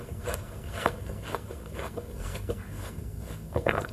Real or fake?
fake